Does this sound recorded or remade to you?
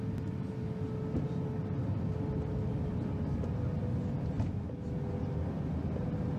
recorded